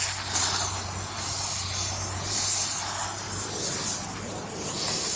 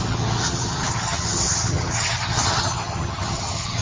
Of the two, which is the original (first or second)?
first